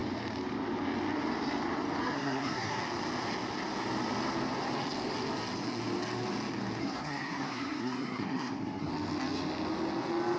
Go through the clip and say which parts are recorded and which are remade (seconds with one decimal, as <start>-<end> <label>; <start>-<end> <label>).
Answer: 0.0-2.0 recorded; 2.0-2.8 remade; 2.8-6.8 recorded; 6.8-8.9 remade; 8.9-10.4 recorded